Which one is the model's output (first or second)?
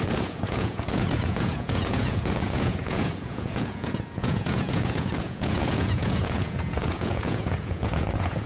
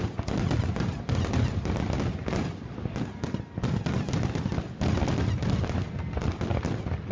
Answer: first